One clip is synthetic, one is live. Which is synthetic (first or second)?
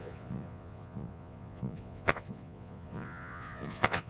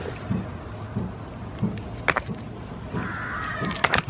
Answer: first